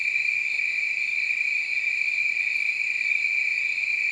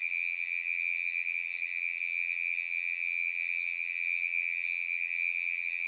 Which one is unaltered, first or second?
first